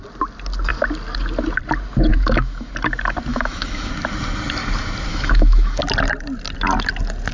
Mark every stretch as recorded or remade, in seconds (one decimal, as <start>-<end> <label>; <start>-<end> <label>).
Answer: 0.0-2.1 recorded; 2.1-2.7 remade; 2.7-3.3 recorded; 3.3-3.9 remade; 3.9-5.1 recorded; 5.1-5.8 remade; 5.8-7.3 recorded